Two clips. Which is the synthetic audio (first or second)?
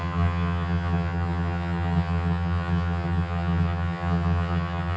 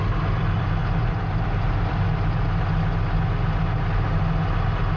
first